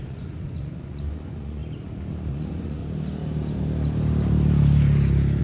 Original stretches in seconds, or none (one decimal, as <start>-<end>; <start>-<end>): 1.6-2.3; 2.8-5.4